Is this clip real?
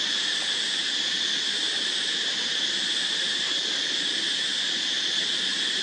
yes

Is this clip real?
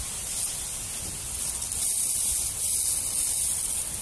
yes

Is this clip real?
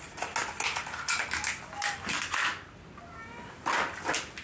yes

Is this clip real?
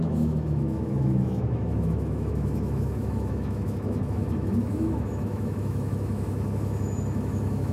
no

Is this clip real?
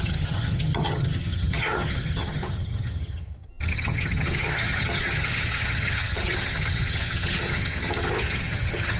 no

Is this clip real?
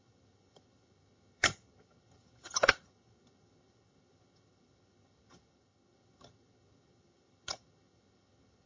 no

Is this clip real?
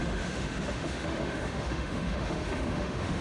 no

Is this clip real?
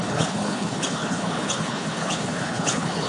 no